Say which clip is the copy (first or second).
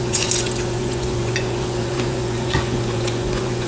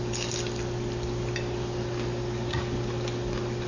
first